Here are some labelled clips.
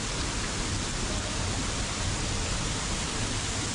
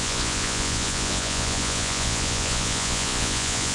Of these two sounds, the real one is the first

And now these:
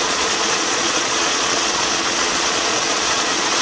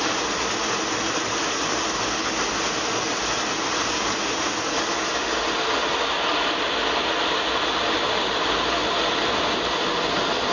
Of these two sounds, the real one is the second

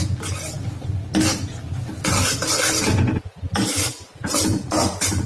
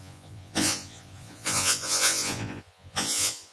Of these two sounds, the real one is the first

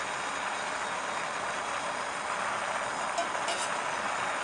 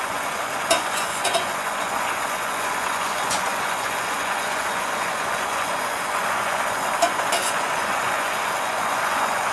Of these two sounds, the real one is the first